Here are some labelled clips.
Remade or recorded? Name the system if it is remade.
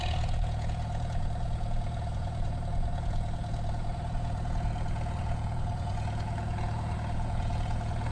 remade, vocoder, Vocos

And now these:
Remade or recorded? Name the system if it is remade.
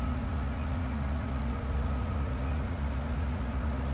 remade, vocoder, Vocos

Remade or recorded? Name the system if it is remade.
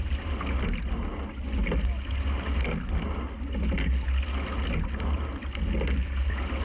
recorded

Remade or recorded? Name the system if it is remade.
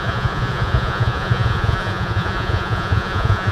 remade, vocoder, Vocos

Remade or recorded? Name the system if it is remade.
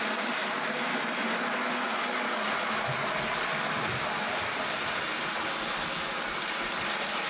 recorded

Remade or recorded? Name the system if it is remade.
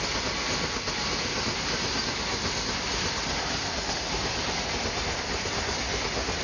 recorded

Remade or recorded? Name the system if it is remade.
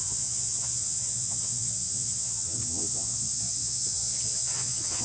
remade, vocoder, Vocos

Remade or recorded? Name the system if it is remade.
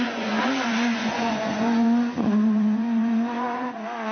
remade, vocoder, Vocos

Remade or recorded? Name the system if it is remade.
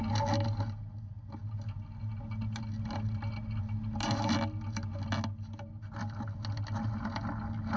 recorded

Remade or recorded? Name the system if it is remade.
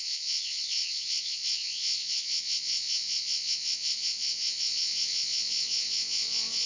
remade, vocoder, Vocos